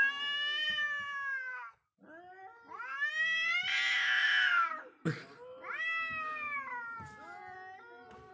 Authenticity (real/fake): real